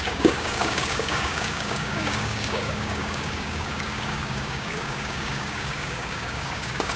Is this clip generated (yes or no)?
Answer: yes